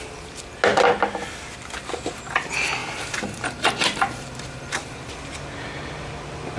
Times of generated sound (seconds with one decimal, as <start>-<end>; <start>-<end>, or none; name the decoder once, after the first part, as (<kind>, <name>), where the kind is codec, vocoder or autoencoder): 2.8-5.1 (vocoder, BigVGAN v2)